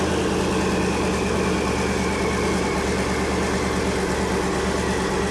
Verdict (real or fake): real